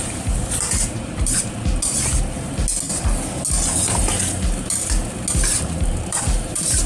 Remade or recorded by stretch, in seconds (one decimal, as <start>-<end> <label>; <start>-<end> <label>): 0.0-1.4 remade; 1.4-5.5 recorded; 5.5-6.9 remade